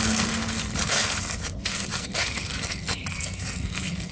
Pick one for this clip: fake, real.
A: fake